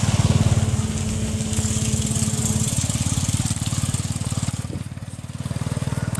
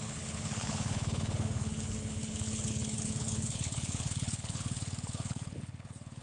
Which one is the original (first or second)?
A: first